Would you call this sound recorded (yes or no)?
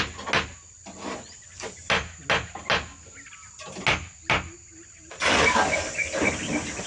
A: yes